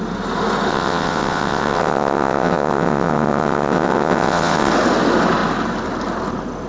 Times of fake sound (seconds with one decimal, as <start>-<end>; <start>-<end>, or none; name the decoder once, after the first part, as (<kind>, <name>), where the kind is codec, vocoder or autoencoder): 0.7-4.7 (vocoder, WaveNeXt)